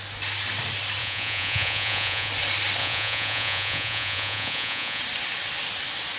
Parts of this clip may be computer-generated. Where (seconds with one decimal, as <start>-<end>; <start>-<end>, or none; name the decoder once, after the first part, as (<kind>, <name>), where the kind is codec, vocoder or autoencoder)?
1.0-2.3 (vocoder, Vocos); 2.8-5.0